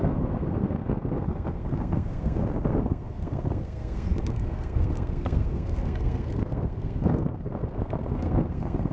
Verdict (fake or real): fake